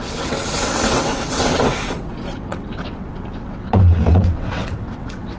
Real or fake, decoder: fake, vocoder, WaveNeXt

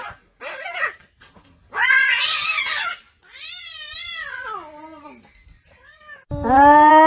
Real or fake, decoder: real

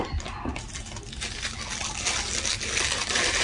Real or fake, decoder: real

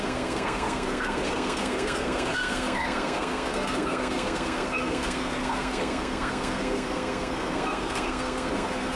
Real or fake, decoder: fake, codec, SNAC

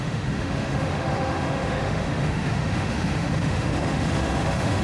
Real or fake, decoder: fake, autoencoder, DAC-VAE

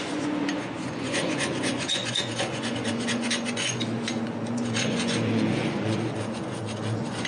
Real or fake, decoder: fake, vocoder, Vocos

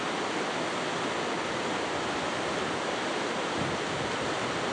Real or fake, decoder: real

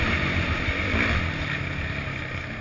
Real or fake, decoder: real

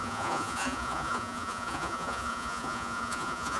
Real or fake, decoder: fake, vocoder, Vocos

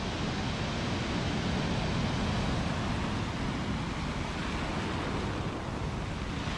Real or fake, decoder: real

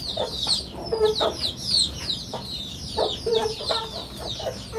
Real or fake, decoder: real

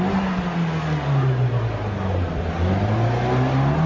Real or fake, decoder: real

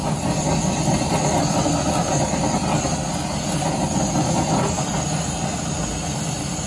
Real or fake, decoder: real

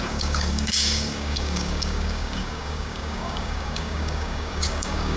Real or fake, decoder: fake, codec, DAC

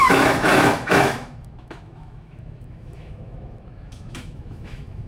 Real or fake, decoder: fake, autoencoder, DAC-VAE